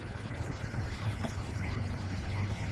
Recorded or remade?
remade